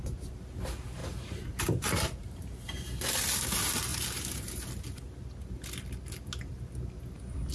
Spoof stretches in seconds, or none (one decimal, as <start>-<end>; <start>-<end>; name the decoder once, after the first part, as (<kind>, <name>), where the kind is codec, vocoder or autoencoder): 1.0-2.8 (vocoder, BigVGAN v2); 3.9-4.7